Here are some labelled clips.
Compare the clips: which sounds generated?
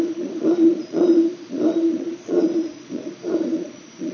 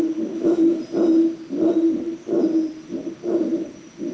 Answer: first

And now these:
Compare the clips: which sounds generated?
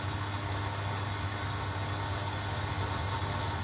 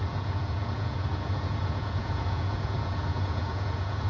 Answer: second